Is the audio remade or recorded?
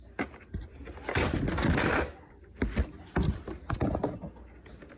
recorded